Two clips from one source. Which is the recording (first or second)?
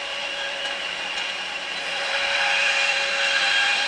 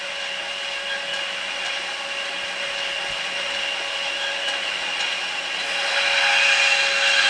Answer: second